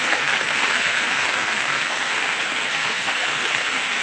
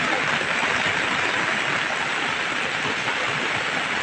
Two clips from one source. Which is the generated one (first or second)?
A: first